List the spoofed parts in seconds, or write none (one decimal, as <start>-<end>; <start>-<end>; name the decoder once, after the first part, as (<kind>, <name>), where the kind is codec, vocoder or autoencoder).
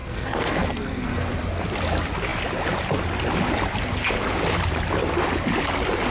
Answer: 0.0-1.3 (codec, SNAC)